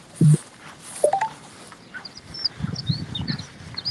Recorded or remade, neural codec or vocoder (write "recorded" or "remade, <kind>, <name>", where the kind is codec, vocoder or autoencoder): remade, vocoder, BigVGAN v2